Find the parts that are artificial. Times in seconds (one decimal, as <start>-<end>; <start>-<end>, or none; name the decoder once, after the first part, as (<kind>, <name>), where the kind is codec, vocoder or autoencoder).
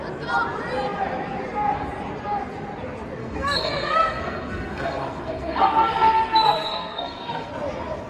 3.2-7.5 (codec, SNAC)